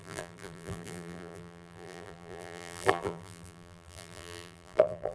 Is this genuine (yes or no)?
no